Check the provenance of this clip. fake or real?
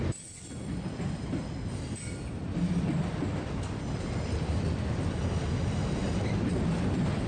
real